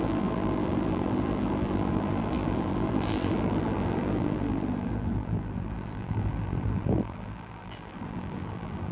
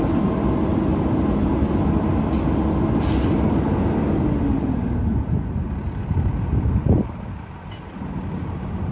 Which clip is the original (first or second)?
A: second